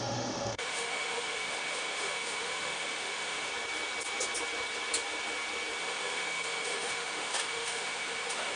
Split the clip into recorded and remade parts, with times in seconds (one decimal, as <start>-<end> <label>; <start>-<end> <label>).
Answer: 0.0-3.5 remade; 3.5-5.8 recorded; 5.8-8.6 remade